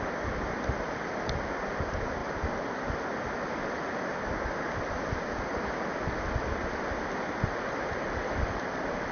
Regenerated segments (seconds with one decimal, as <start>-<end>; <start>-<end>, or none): none

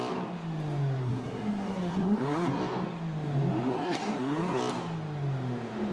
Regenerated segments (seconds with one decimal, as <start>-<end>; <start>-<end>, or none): 1.0-2.6; 3.7-4.6

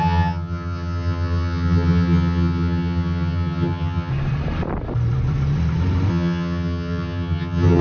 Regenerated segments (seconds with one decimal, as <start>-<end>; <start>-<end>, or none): 0.0-4.1; 6.1-7.8

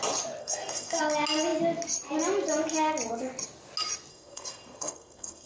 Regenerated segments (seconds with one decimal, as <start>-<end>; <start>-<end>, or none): 0.4-1.0; 4.1-5.5

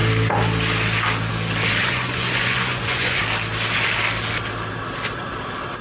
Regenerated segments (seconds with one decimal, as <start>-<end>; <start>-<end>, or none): 1.8-3.2

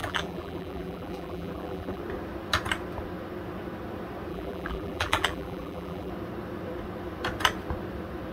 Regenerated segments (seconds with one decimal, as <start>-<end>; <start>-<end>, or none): 0.0-2.0; 4.3-6.1

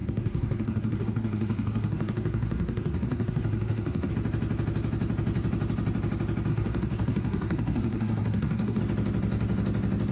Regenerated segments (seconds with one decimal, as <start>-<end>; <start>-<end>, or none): 0.0-4.1; 6.5-8.8